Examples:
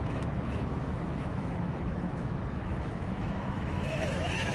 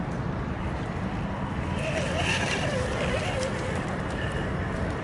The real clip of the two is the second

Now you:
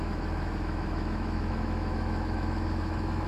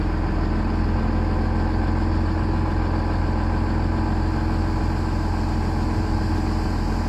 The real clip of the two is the second